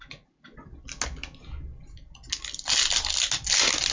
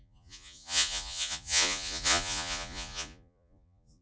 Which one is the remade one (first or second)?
second